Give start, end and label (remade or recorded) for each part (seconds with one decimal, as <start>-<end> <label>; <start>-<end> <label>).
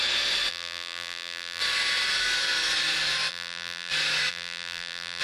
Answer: 0.0-0.5 recorded; 0.5-1.6 remade; 1.6-3.3 recorded; 3.3-3.9 remade; 3.9-4.3 recorded; 4.3-5.2 remade